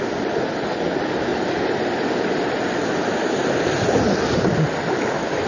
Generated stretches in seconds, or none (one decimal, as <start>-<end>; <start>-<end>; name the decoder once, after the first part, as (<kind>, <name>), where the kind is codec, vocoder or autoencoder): none